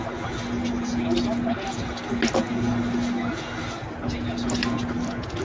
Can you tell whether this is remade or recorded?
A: recorded